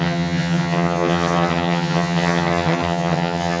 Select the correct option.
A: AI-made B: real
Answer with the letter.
A